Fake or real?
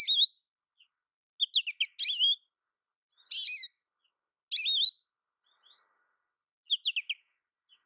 real